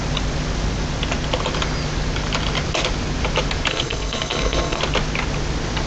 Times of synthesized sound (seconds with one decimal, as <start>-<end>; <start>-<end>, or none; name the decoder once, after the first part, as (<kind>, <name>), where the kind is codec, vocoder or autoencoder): 3.7-4.8 (codec, SNAC)